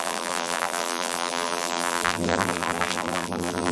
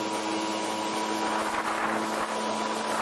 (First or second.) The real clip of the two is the second